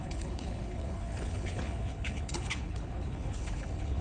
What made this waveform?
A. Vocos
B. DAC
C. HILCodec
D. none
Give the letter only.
C